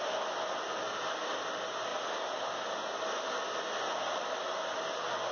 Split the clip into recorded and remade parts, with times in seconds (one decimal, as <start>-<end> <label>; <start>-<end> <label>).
0.0-5.3 recorded